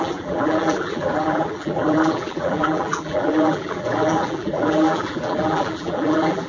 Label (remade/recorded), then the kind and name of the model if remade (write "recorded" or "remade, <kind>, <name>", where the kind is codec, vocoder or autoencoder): remade, vocoder, BigVGAN v2